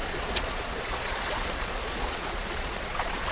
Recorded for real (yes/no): no